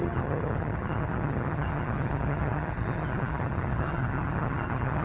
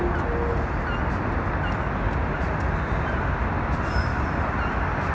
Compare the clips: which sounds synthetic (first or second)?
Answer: first